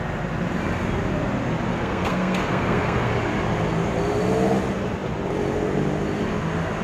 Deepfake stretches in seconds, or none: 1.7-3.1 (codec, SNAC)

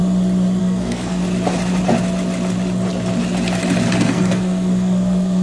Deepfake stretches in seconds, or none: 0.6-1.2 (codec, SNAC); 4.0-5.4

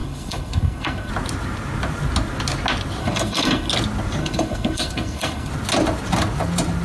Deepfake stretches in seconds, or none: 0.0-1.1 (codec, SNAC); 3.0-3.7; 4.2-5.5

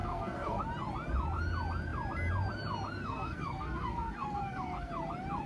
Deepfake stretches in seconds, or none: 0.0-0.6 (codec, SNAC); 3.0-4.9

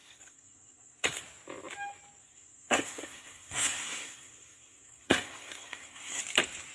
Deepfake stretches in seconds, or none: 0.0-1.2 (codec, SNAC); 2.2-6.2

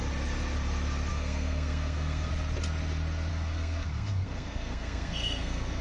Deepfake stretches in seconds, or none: 1.1-2.3 (codec, SNAC); 3.3-5.8